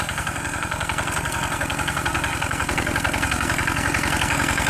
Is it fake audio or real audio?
fake